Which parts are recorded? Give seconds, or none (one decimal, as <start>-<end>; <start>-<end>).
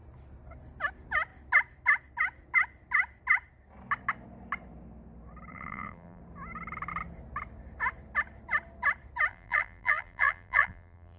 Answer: 0.0-5.5; 6.2-9.3